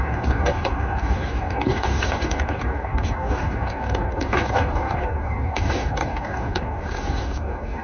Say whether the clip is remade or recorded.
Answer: remade